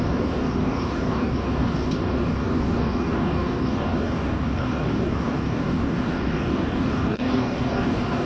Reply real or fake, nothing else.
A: fake